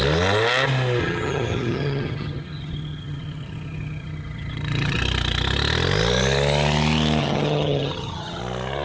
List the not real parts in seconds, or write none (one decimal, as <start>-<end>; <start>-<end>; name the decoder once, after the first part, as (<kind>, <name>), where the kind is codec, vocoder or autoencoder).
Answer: 1.0-5.0 (vocoder, HiFi-GAN); 7.2-8.4